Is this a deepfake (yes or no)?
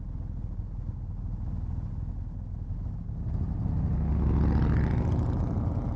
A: no